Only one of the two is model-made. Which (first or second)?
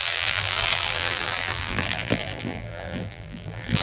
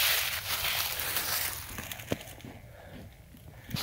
first